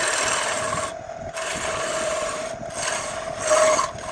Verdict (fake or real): real